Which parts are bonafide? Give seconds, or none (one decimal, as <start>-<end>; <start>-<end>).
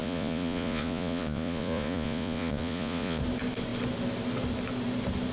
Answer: 3.2-5.3